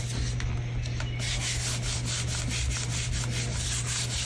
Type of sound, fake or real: real